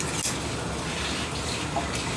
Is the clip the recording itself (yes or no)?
yes